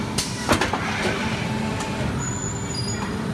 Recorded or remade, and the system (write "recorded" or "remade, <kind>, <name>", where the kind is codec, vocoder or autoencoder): recorded